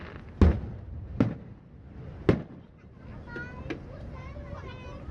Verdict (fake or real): real